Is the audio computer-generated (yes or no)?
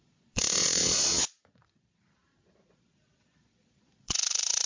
yes